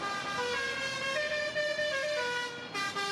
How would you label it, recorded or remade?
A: recorded